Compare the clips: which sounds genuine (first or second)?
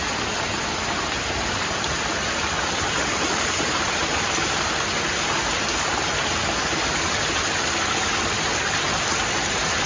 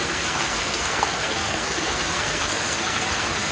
first